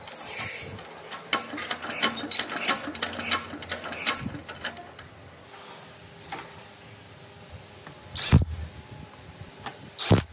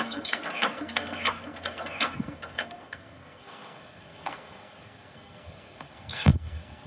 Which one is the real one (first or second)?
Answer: first